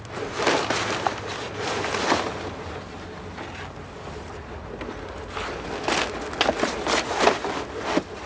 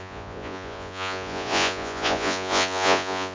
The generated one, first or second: second